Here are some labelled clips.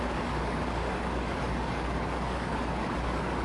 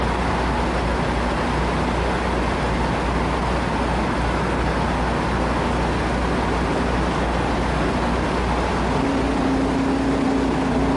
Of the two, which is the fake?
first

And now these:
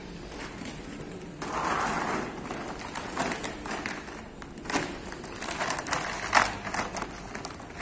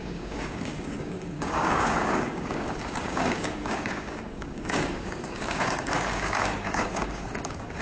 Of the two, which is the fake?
second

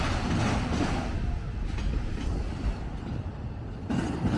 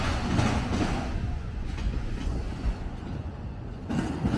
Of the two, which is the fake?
second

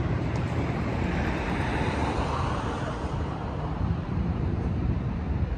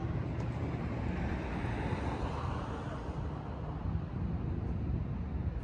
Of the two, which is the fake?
first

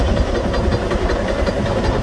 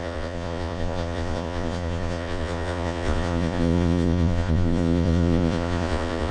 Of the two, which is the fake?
second